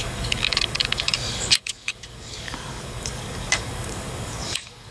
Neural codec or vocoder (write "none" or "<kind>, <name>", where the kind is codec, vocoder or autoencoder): codec, DAC